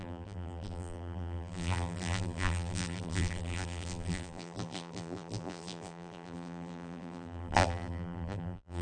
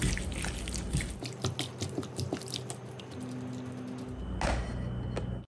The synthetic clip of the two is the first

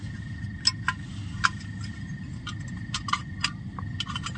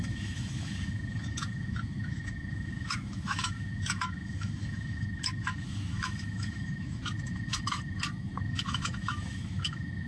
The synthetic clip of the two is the second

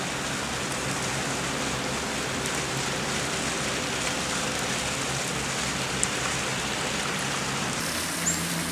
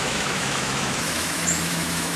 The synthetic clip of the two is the second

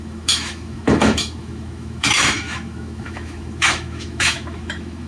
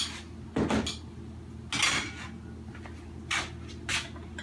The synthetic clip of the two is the first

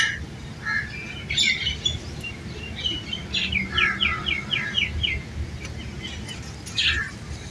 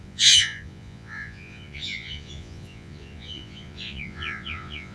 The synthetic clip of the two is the second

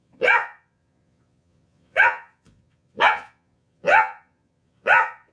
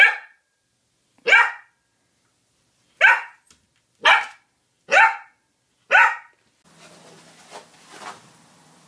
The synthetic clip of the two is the first